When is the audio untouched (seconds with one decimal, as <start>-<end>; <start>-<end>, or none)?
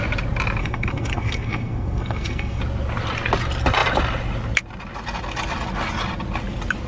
0.0-0.6; 2.6-6.9